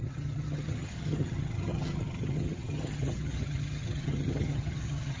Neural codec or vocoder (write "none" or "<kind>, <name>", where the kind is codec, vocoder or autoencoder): vocoder, HiFi-GAN